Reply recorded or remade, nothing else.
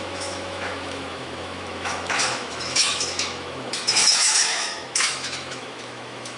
remade